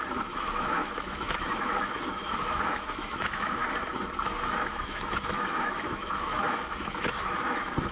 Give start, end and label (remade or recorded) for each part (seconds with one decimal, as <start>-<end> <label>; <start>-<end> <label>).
0.0-3.6 remade; 3.6-4.6 recorded; 4.6-7.9 remade